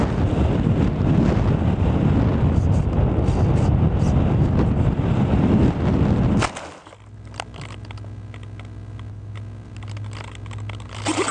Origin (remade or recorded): recorded